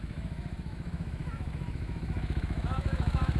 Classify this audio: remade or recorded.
remade